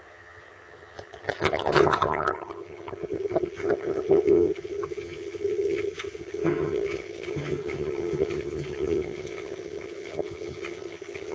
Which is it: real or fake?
fake